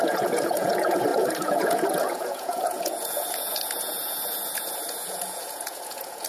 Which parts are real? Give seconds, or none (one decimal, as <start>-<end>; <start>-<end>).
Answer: none